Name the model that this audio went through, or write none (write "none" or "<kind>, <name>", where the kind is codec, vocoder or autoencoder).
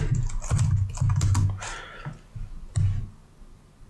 none